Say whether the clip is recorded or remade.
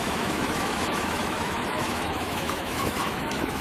remade